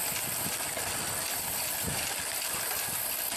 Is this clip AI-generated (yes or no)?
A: no